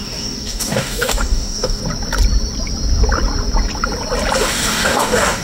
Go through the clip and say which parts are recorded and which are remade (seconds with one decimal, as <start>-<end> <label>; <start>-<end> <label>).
0.0-1.8 remade; 1.8-4.4 recorded; 4.4-5.4 remade